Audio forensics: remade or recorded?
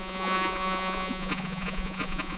remade